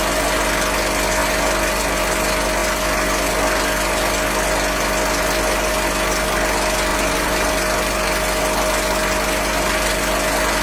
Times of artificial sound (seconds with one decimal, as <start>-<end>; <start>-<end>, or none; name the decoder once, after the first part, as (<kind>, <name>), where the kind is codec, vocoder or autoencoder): 6.9-7.5 (vocoder, BigVGAN v2)